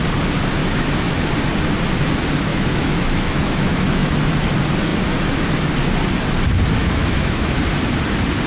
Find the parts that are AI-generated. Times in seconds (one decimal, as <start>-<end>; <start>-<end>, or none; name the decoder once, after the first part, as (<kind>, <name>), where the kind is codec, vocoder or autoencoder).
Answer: 0.6-1.3 (autoencoder, DAC-VAE); 2.5-4.3; 6.8-7.6